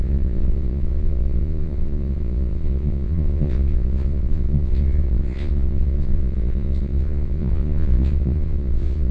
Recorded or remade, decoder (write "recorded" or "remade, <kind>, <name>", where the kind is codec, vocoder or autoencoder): remade, vocoder, Vocos